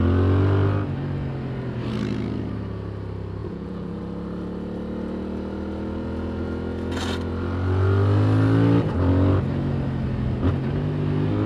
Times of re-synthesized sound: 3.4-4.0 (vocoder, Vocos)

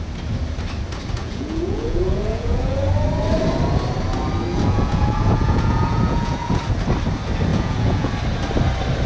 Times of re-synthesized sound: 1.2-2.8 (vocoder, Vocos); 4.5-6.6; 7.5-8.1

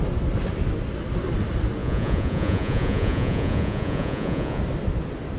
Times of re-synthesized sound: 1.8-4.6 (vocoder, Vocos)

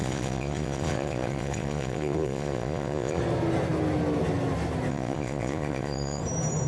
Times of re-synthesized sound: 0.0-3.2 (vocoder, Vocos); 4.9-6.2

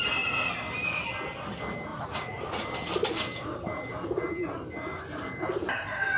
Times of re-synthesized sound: 1.9-2.6 (vocoder, Vocos)

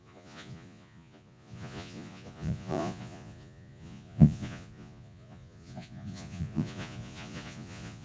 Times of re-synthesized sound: 0.0-8.0 (vocoder, Vocos)

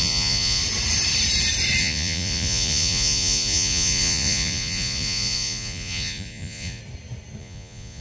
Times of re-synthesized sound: 0.0-0.6 (vocoder, Vocos); 1.8-6.8; 7.4-8.0

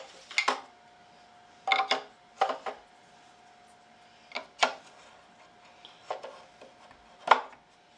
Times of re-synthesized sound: none